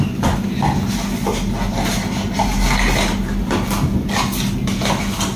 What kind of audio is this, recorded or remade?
recorded